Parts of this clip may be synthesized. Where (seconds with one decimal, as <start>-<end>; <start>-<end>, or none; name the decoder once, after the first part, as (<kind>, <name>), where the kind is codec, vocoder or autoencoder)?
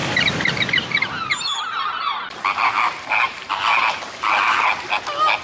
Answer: none